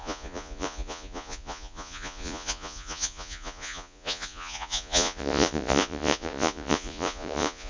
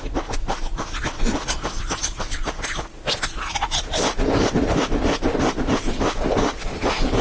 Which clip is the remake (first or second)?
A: first